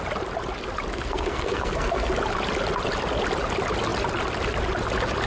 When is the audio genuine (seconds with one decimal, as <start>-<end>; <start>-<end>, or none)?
0.0-0.9; 2.1-5.3